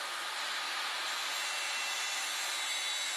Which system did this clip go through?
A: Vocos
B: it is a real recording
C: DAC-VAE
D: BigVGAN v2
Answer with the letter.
B